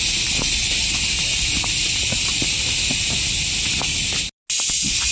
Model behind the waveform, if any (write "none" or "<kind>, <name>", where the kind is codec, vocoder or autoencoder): none